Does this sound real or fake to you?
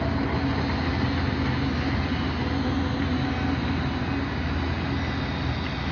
real